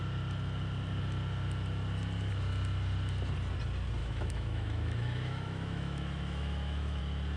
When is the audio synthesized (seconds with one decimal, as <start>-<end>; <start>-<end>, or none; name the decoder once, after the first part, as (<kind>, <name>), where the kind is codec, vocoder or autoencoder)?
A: 4.0-7.0 (autoencoder, DAC-VAE)